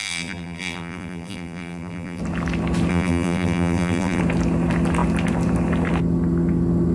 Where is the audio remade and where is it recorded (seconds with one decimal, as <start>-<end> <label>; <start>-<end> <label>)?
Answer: 0.0-2.2 remade; 2.2-2.9 recorded; 2.9-4.2 remade; 4.2-6.9 recorded

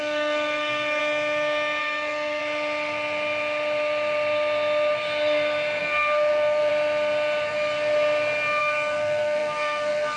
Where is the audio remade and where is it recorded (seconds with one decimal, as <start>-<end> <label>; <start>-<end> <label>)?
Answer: 0.0-1.0 remade; 1.0-1.8 recorded; 1.8-2.4 remade; 2.4-5.8 recorded; 5.8-6.7 remade; 6.7-8.6 recorded; 8.6-10.2 remade

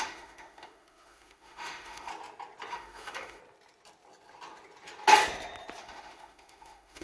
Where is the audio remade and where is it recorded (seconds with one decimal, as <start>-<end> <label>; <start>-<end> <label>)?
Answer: 0.0-2.1 remade; 2.1-2.7 recorded; 2.7-3.4 remade; 3.4-5.8 recorded; 5.8-7.0 remade

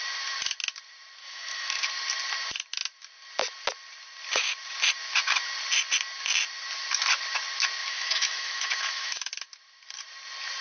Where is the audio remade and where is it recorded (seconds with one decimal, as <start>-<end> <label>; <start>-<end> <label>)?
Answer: 0.0-1.2 recorded; 1.2-1.9 remade; 1.9-7.8 recorded; 7.8-9.3 remade; 9.3-10.6 recorded

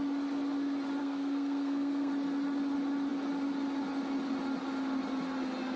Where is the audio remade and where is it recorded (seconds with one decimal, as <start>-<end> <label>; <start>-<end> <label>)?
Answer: 0.0-1.0 recorded; 1.0-2.1 remade; 2.1-5.8 recorded

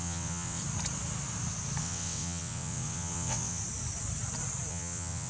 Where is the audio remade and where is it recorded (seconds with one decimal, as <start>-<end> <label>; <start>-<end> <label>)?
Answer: 0.0-0.6 remade; 0.6-1.8 recorded; 1.8-3.6 remade; 3.6-4.7 recorded; 4.7-5.3 remade

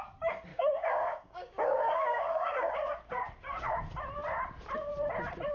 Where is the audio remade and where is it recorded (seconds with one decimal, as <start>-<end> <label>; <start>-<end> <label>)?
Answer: 0.0-0.5 recorded; 0.5-2.7 remade; 2.7-5.5 recorded